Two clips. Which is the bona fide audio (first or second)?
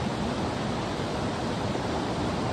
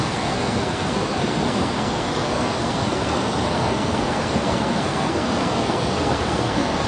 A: first